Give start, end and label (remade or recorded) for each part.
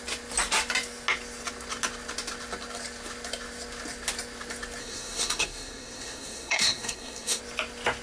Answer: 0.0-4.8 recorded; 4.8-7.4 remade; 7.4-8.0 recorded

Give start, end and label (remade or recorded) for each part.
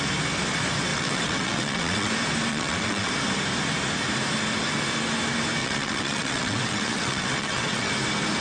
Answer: 0.0-0.9 recorded; 0.9-2.1 remade; 2.1-2.5 recorded; 2.5-3.1 remade; 3.1-5.6 recorded; 5.6-7.9 remade; 7.9-8.4 recorded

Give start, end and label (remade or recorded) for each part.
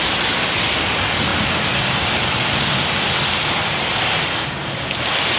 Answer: 0.0-5.4 recorded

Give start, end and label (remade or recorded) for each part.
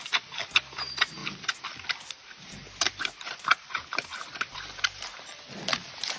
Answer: 0.0-2.2 recorded; 2.2-5.3 remade; 5.3-6.2 recorded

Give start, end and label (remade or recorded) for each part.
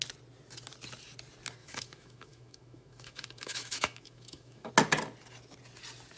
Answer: 0.0-1.6 recorded; 1.6-4.7 remade; 4.7-6.2 recorded